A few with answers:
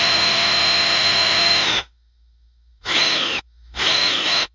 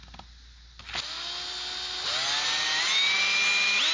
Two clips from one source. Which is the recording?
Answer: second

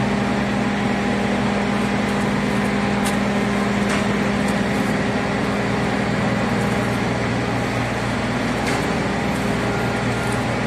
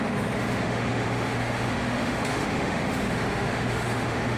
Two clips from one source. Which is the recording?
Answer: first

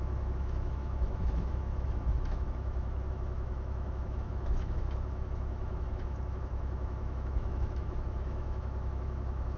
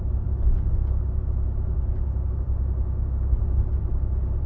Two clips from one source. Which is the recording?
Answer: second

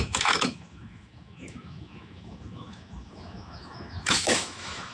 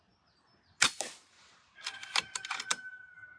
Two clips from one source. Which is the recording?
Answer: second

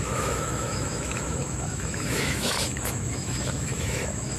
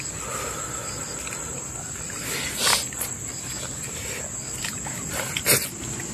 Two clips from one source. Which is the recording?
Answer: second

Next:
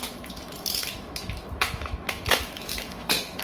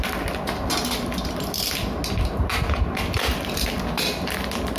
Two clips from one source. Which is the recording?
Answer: second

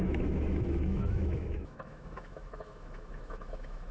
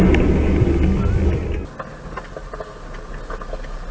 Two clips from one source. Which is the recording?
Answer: second